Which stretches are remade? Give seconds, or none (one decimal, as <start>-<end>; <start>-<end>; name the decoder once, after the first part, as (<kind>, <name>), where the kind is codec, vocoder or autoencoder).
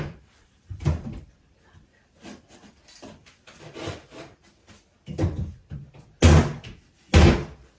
0.0-5.8 (vocoder, BigVGAN v2); 7.2-7.8